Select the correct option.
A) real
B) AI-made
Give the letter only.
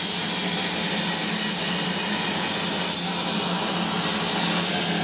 A